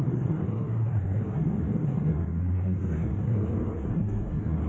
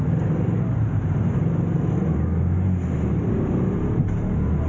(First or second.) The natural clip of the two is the second